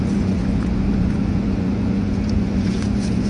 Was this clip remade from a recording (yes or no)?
yes